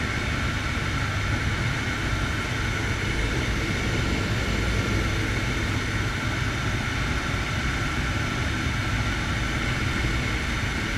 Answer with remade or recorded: recorded